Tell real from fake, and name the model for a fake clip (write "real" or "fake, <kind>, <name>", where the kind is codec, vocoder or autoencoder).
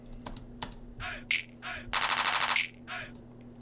real